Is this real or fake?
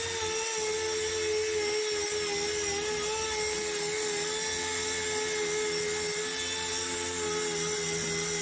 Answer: real